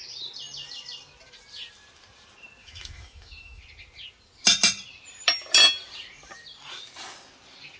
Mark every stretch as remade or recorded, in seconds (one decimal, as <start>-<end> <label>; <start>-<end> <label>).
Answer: 0.0-2.6 recorded; 2.6-3.6 remade; 3.6-7.8 recorded